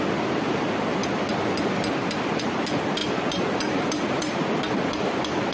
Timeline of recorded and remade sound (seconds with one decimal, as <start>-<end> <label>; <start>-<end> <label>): 0.0-5.5 recorded